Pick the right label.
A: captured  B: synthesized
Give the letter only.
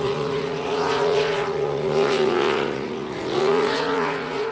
B